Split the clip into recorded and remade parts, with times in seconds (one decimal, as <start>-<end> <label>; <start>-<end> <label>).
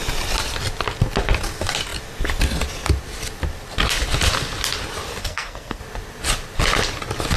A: 0.0-5.2 recorded; 5.2-5.8 remade; 5.8-7.4 recorded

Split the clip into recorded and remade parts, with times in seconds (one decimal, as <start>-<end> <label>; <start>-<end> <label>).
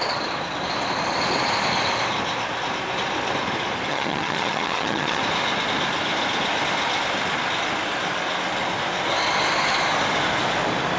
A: 0.0-3.9 recorded; 3.9-5.2 remade; 5.2-11.0 recorded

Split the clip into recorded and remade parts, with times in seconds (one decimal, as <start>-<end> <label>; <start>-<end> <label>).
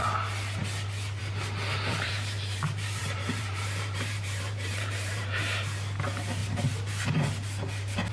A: 0.0-1.9 recorded; 1.9-5.4 remade; 5.4-8.1 recorded